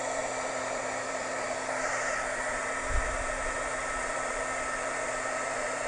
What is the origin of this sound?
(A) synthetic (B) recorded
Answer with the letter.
A